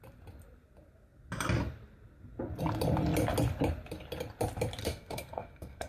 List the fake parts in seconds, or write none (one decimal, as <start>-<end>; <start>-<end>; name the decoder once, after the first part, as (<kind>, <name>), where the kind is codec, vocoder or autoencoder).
4.8-5.9 (codec, SNAC)